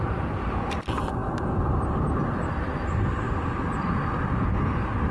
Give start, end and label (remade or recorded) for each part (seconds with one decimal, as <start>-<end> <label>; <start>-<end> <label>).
0.0-5.1 recorded